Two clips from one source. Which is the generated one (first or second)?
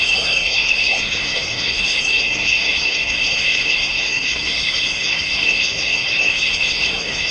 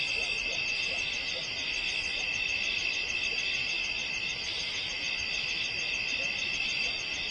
first